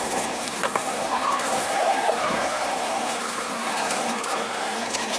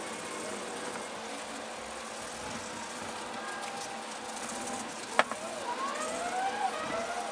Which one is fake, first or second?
first